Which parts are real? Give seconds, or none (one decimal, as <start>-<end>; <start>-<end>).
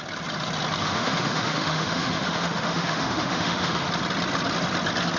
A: 0.0-0.8; 3.9-5.2